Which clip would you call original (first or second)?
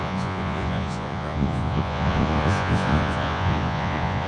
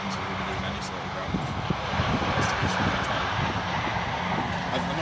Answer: second